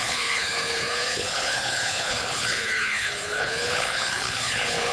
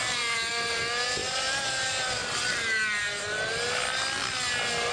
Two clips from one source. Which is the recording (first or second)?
second